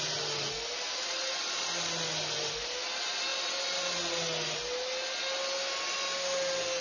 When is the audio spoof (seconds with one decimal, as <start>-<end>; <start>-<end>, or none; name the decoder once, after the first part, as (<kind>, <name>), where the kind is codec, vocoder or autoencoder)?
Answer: none